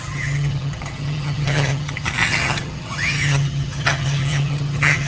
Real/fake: fake